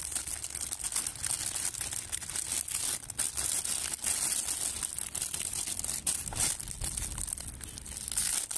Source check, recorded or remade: recorded